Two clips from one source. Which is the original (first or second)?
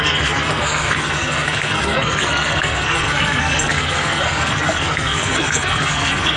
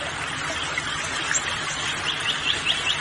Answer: second